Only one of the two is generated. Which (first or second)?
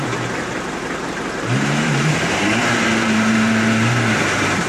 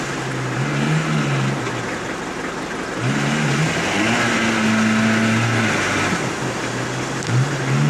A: first